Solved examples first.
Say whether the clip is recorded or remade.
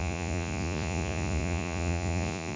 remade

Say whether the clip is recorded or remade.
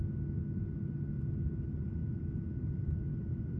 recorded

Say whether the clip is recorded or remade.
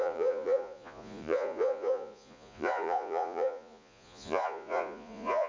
remade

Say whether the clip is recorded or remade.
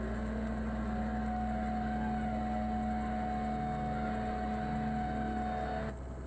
recorded